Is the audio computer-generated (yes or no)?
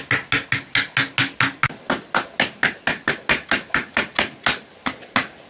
no